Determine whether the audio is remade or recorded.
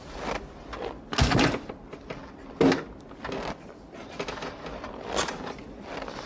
recorded